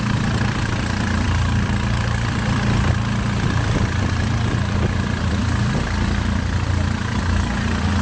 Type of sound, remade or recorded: remade